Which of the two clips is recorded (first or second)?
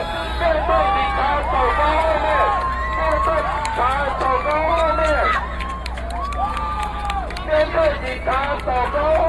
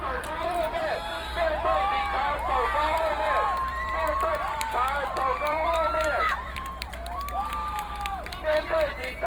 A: first